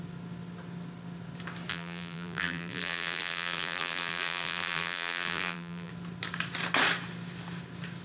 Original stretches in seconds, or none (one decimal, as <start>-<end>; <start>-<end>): 0.0-1.7; 5.9-8.0